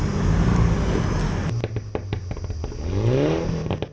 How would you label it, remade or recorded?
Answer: recorded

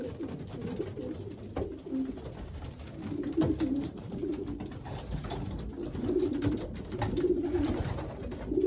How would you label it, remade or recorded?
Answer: recorded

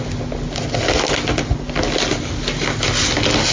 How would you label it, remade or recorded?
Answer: recorded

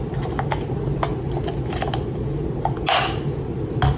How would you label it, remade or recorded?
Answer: recorded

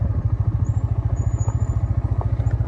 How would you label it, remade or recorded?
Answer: recorded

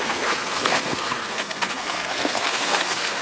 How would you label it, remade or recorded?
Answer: remade